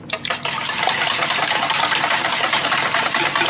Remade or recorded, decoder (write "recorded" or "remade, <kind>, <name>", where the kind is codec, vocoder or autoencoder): recorded